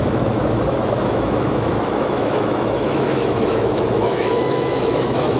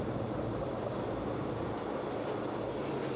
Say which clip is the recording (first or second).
second